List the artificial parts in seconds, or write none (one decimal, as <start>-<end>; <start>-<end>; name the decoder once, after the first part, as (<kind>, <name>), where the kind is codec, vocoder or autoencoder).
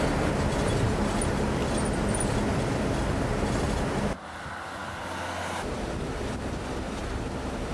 none